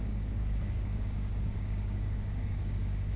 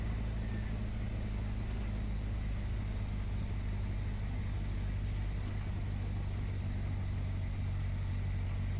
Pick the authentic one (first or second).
second